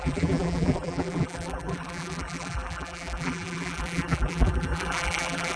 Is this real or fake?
fake